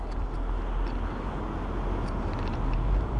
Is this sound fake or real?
real